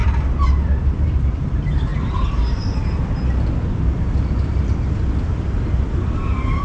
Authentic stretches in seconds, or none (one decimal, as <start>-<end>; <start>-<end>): 1.9-5.9